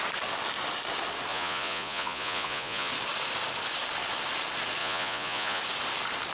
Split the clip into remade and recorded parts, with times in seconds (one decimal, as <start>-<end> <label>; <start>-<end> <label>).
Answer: 0.0-1.3 recorded; 1.3-2.9 remade; 2.9-4.8 recorded; 4.8-5.6 remade; 5.6-6.3 recorded